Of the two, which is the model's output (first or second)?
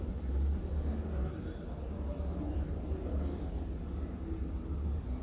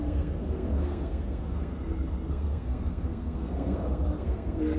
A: second